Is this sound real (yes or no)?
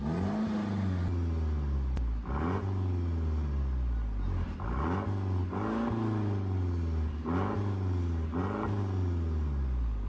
yes